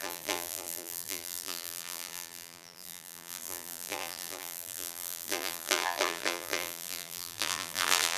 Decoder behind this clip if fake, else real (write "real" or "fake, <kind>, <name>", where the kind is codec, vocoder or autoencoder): fake, vocoder, BigVGAN v2